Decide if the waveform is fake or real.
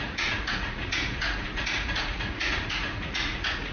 fake